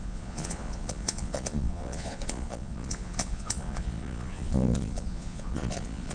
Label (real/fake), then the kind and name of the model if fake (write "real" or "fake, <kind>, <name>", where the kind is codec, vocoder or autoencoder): fake, vocoder, Vocos